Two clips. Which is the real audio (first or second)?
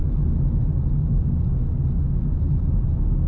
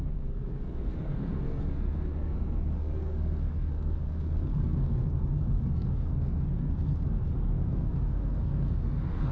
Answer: first